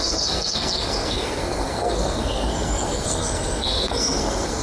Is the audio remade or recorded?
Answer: remade